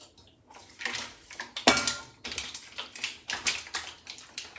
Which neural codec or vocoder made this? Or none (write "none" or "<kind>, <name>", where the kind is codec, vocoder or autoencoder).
none